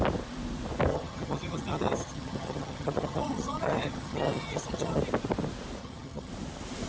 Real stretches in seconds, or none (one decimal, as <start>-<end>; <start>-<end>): 0.0-0.9; 5.0-5.8; 6.3-6.9